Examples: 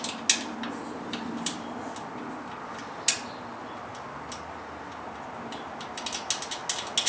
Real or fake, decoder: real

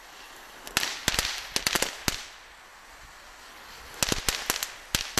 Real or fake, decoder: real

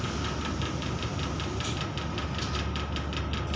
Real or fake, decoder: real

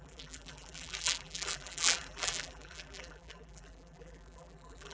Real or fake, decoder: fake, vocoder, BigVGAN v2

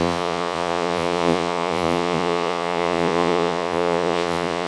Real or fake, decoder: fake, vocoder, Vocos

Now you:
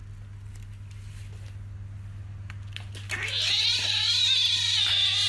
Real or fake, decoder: real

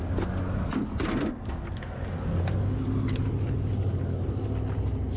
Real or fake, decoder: real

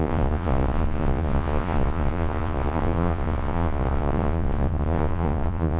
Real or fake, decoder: fake, vocoder, Vocos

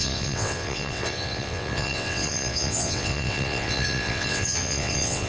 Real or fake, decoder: fake, vocoder, WaveNeXt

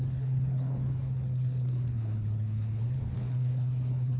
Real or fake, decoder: fake, codec, HILCodec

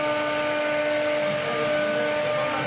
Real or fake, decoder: real